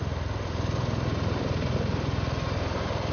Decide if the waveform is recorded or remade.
recorded